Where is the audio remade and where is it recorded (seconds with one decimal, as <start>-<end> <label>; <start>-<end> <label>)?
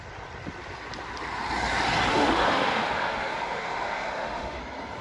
0.0-2.1 recorded; 2.1-4.6 remade; 4.6-5.0 recorded